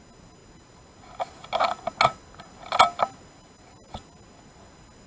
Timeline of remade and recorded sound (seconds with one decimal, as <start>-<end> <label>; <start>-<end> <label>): 0.0-5.1 recorded